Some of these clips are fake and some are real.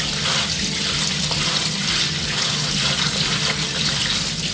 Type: real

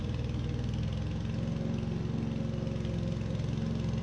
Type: real